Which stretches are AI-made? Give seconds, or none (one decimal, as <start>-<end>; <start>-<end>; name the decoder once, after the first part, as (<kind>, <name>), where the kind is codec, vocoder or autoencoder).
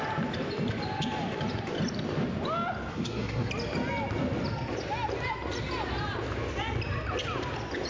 2.9-3.5 (codec, SNAC)